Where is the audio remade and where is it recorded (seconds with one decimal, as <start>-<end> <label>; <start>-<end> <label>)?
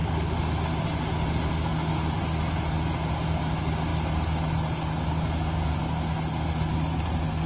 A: 0.0-7.5 recorded